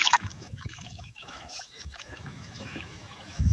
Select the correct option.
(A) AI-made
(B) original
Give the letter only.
A